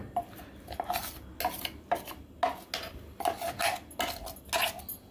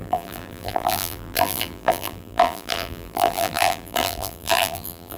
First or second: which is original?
first